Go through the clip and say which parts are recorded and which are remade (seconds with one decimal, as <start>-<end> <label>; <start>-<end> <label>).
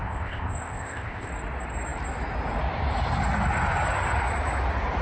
0.0-1.3 remade; 1.3-5.0 recorded